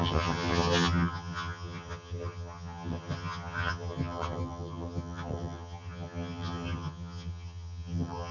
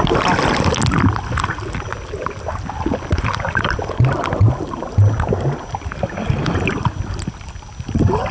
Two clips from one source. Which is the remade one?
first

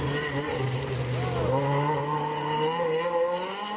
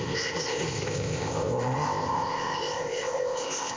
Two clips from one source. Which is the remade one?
second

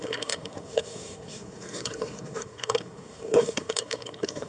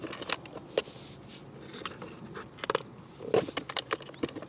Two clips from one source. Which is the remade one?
first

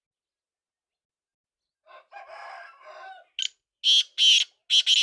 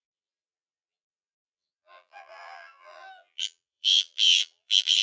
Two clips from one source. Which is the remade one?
second